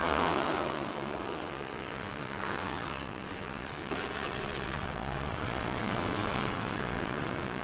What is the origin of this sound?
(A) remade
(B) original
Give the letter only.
A